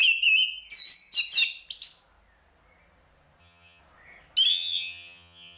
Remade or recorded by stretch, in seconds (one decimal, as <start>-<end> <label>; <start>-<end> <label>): 0.0-3.4 recorded; 3.4-3.8 remade; 3.8-4.5 recorded; 4.5-5.6 remade